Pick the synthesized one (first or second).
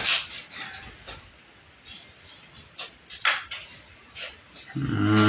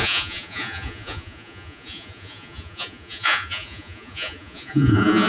second